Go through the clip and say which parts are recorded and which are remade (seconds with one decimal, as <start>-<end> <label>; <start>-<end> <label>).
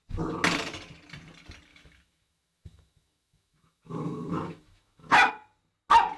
0.0-1.7 recorded; 1.7-5.3 remade; 5.3-6.2 recorded